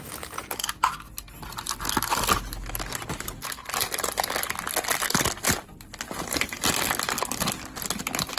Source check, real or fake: real